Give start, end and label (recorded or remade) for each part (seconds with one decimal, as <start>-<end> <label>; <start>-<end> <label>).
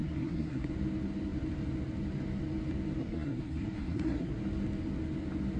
0.0-0.7 remade; 0.7-3.0 recorded; 3.0-4.4 remade; 4.4-5.6 recorded